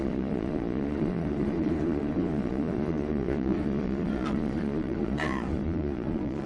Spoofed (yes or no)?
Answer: yes